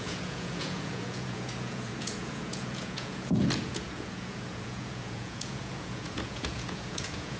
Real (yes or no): no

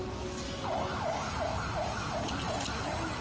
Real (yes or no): yes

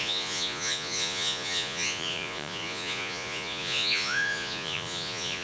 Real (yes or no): no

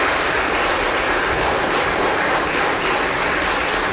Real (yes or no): yes